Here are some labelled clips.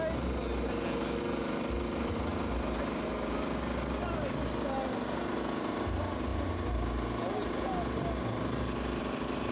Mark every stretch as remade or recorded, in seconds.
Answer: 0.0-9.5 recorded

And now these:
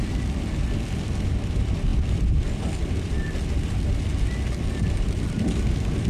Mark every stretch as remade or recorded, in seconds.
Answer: 0.0-6.1 remade

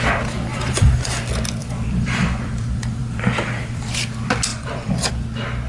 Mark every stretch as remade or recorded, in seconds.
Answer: 0.0-0.5 recorded; 0.5-1.2 remade; 1.2-1.6 recorded; 1.6-3.9 remade; 3.9-4.5 recorded; 4.5-5.1 remade; 5.1-5.7 recorded

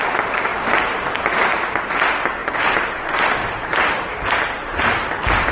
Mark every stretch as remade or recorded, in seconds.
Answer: 0.0-2.4 recorded; 2.4-3.0 remade; 3.0-3.4 recorded; 3.4-5.1 remade; 5.1-5.5 recorded

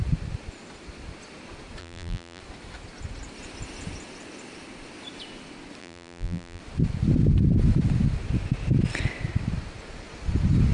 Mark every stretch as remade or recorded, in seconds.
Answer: 0.0-1.8 recorded; 1.8-2.4 remade; 2.4-5.8 recorded; 5.8-6.6 remade; 6.6-10.7 recorded

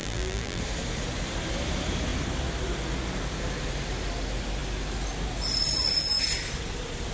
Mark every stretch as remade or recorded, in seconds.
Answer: 0.0-0.6 remade; 0.6-7.1 recorded

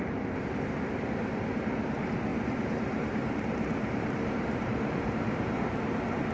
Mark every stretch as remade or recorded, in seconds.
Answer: 0.0-2.3 recorded; 2.3-6.3 remade

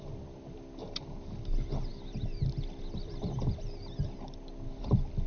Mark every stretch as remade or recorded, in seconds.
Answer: 0.0-5.3 recorded